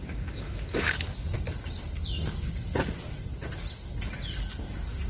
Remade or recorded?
recorded